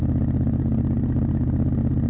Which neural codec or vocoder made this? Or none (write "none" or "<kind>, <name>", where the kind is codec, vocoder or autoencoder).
none